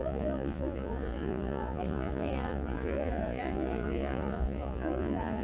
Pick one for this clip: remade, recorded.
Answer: remade